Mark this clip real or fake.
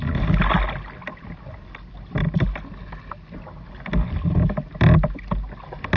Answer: real